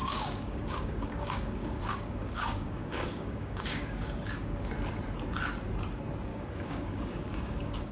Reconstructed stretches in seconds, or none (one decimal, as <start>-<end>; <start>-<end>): 0.0-4.7; 6.3-7.9